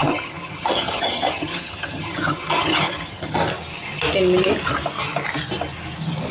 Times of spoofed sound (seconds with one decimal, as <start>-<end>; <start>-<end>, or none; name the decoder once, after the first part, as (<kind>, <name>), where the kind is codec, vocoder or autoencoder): 0.0-3.4 (vocoder, HiFi-GAN)